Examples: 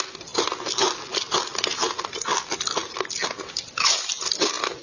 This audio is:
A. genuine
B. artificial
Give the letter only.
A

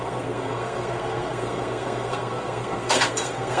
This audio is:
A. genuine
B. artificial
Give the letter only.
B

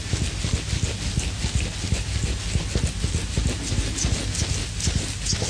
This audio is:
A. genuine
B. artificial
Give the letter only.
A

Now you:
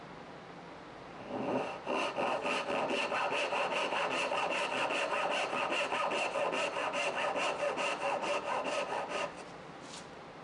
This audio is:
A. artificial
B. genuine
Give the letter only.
B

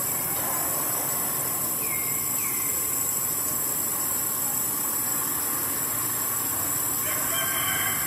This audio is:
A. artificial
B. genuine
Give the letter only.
B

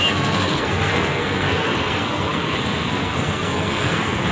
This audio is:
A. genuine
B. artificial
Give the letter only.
B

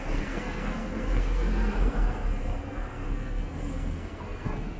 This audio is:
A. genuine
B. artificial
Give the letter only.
B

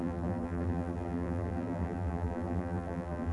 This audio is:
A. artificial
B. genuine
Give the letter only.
A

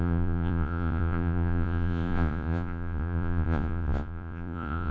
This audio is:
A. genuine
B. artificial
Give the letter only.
B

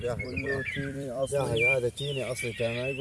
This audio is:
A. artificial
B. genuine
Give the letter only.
A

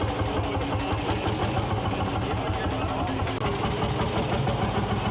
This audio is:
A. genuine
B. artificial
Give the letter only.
A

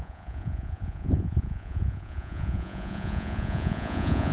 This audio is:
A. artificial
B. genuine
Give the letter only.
A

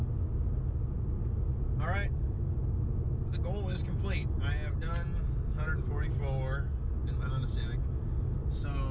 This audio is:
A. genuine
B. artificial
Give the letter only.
A